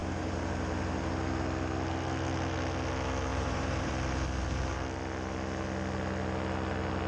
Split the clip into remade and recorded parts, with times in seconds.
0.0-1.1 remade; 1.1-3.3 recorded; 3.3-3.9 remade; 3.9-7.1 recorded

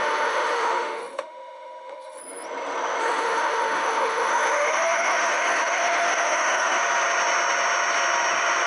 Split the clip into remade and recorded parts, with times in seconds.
0.0-2.2 remade; 2.2-3.0 recorded; 3.0-6.8 remade; 6.8-8.7 recorded

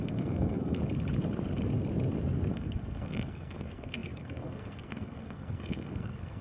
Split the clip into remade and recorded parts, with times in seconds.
0.0-0.8 remade; 0.8-2.5 recorded; 2.5-6.4 remade

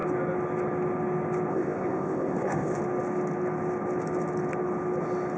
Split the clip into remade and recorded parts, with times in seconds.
0.0-1.5 recorded; 1.5-2.8 remade; 2.8-5.4 recorded

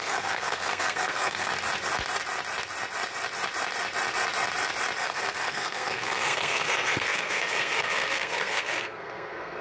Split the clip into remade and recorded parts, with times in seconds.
0.0-1.5 remade; 1.5-5.0 recorded; 5.0-9.6 remade

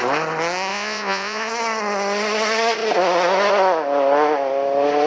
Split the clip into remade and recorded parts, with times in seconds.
0.0-0.7 recorded; 0.7-1.5 remade; 1.5-5.1 recorded

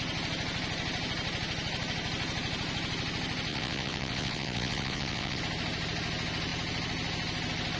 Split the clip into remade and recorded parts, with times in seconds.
0.0-3.5 recorded; 3.5-5.4 remade; 5.4-7.8 recorded